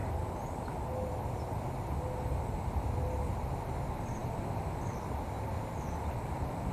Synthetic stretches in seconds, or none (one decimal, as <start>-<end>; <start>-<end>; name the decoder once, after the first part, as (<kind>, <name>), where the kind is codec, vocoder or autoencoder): none